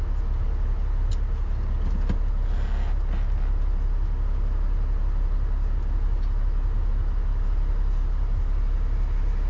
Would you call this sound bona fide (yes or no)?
yes